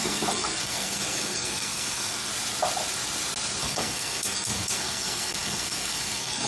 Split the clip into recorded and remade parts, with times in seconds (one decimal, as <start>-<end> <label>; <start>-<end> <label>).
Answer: 0.0-2.3 remade; 2.3-3.6 recorded; 3.6-6.5 remade